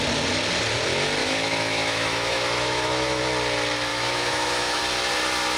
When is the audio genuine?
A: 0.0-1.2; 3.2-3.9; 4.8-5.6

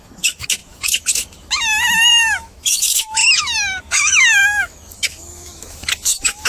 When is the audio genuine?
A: none

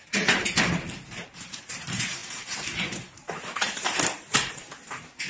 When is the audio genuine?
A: none

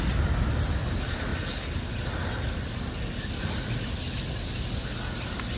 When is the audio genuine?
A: 0.0-5.6

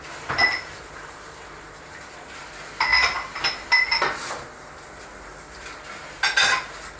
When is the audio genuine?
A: 0.0-7.0